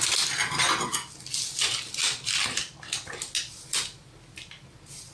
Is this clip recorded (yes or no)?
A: yes